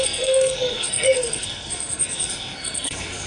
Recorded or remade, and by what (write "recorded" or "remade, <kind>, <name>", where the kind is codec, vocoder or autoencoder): remade, codec, SNAC